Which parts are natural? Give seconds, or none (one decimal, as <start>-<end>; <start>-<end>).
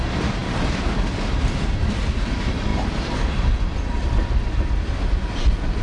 0.0-2.7; 3.5-5.8